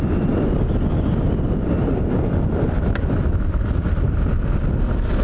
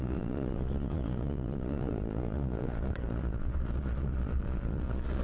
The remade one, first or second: second